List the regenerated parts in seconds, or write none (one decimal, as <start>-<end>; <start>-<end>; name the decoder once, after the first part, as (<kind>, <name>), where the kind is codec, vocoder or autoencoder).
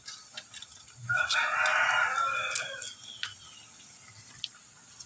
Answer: none